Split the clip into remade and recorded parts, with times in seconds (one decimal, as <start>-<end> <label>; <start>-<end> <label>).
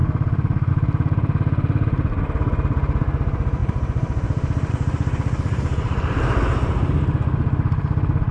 0.0-8.3 remade